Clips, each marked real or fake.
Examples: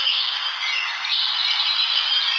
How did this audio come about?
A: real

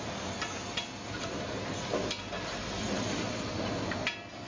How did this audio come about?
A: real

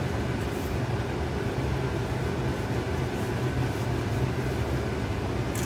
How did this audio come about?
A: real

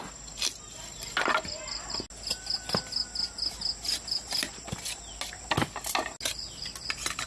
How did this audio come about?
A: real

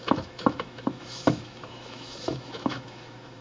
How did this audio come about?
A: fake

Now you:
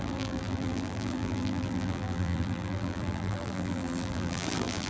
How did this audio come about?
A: fake